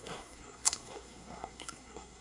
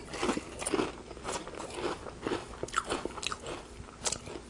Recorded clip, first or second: second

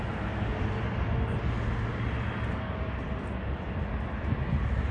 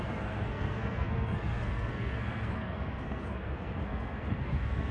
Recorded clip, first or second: first